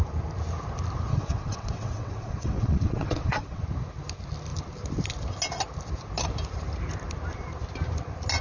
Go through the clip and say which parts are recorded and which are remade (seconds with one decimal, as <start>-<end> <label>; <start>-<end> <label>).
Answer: 0.0-1.1 recorded; 1.1-3.6 remade; 3.6-8.4 recorded